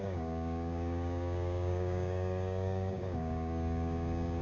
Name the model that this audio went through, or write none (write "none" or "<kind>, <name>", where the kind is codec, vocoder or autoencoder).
codec, DAC